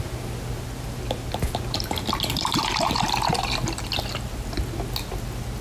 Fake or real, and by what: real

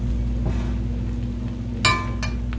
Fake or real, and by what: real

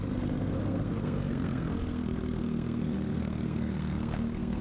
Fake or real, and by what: fake, codec, SNAC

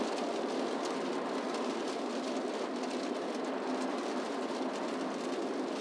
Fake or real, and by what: real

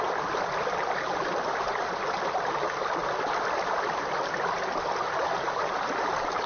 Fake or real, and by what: real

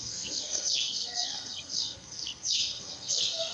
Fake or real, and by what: fake, codec, SNAC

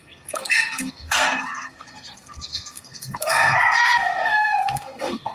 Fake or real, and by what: fake, codec, SNAC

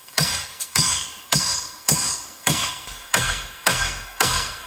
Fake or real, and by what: fake, codec, SNAC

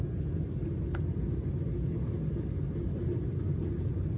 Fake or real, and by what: real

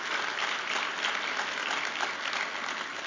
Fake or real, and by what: real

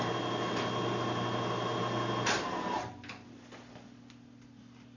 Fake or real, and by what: real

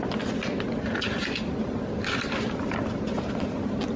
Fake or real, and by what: real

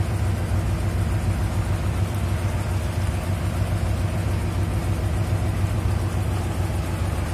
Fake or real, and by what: real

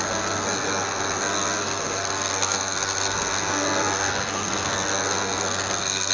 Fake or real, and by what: fake, codec, SNAC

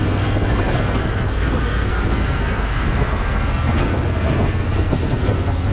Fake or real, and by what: fake, codec, SNAC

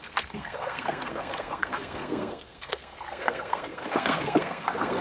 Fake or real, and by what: fake, codec, SNAC